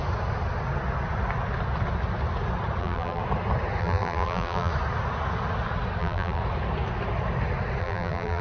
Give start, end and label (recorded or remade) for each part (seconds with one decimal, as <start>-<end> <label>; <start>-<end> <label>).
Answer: 0.0-2.8 recorded; 2.8-3.2 remade; 3.2-3.8 recorded; 3.8-4.7 remade; 4.7-6.0 recorded; 6.0-6.4 remade; 6.4-7.8 recorded; 7.8-8.4 remade